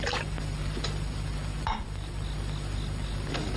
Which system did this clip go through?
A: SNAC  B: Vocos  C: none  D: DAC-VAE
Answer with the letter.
C